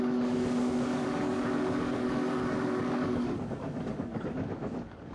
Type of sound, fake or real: fake